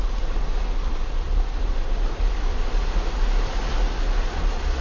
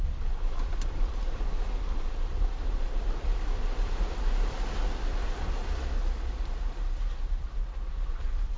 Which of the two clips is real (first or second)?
first